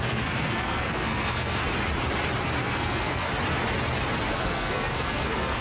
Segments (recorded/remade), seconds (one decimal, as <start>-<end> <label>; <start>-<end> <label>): 0.0-1.6 remade; 1.6-2.6 recorded; 2.6-3.3 remade; 3.3-4.3 recorded; 4.3-5.6 remade